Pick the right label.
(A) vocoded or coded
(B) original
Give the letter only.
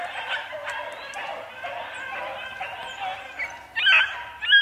B